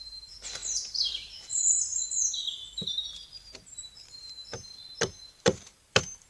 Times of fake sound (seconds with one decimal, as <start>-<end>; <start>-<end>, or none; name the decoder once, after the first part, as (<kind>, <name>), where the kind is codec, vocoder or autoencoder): 0.0-4.4 (vocoder, BigVGAN v2); 5.4-6.3

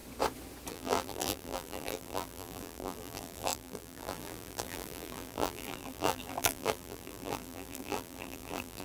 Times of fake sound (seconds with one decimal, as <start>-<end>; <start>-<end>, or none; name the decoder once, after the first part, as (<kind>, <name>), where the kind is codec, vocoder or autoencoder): 0.7-8.8 (vocoder, BigVGAN v2)

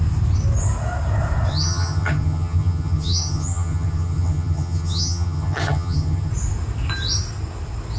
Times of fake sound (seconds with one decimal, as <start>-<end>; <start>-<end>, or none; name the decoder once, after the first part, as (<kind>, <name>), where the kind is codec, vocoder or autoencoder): 1.5-6.3 (vocoder, HiFi-GAN)

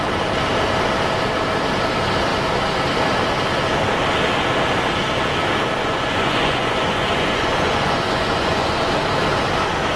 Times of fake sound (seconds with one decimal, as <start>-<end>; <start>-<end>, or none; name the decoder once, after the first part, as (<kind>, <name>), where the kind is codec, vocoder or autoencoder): 5.8-8.9 (vocoder, Vocos)

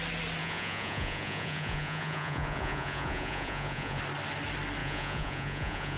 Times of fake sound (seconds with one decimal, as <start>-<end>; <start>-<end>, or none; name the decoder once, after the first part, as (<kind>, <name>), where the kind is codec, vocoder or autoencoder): 0.4-4.0 (vocoder, Vocos); 4.8-6.0

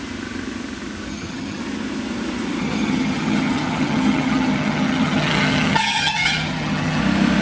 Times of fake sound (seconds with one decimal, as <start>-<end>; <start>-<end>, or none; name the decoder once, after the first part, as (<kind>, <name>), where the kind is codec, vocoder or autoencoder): 1.1-1.6 (vocoder, HiFi-GAN); 2.6-7.0

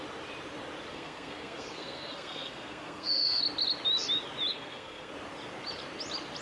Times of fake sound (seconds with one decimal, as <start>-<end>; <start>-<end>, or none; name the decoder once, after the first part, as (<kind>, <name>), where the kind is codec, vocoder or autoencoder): 0.9-3.4 (codec, SNAC); 4.5-5.1

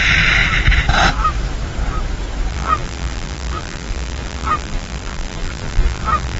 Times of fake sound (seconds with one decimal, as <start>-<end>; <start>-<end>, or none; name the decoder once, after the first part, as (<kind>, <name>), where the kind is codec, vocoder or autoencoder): 2.5-6.4 (vocoder, BigVGAN v2)